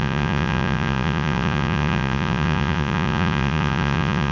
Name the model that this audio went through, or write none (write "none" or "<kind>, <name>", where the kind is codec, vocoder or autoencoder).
vocoder, Vocos